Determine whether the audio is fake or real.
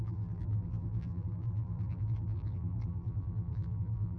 fake